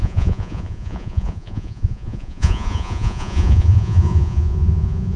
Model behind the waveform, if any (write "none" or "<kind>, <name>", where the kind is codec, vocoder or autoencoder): vocoder, Vocos